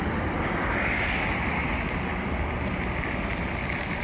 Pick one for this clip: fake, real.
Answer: real